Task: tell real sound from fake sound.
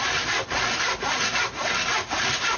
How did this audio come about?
real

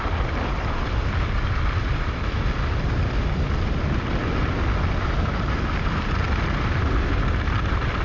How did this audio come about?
real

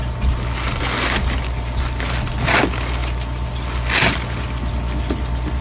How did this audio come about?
real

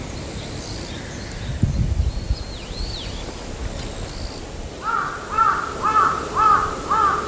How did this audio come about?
real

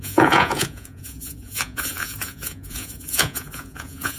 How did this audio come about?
fake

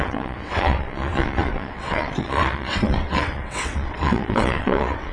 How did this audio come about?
fake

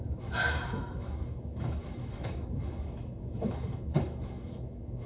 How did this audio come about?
fake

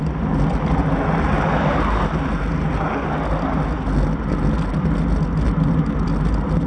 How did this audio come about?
real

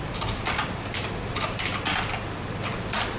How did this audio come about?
fake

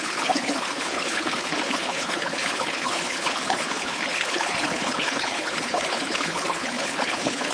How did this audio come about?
fake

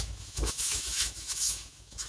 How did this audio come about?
fake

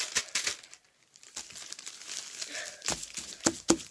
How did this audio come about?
real